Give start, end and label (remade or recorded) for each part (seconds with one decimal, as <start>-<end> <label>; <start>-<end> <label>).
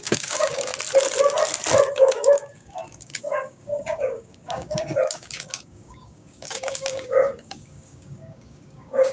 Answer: 0.0-0.7 remade; 0.7-1.9 recorded; 1.9-9.1 remade